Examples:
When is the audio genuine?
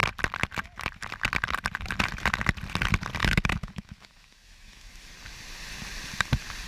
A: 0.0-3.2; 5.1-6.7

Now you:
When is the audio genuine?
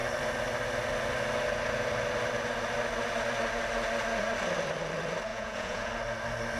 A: 0.0-5.3; 5.9-6.6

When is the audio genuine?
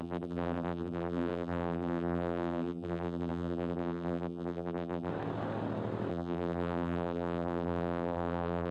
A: 5.1-6.1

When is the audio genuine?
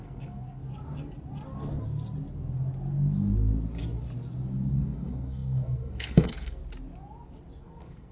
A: 0.6-4.8; 6.6-7.6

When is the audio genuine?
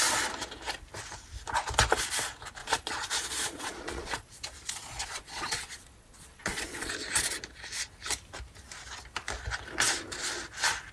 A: 0.0-2.6; 6.9-10.9